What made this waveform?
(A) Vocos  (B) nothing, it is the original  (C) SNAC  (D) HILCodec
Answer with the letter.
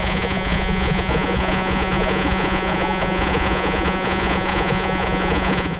A